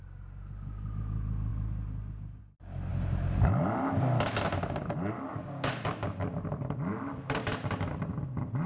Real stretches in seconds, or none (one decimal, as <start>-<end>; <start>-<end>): 0.0-8.7